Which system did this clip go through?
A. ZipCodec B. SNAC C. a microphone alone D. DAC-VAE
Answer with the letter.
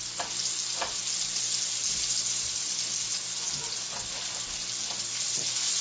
C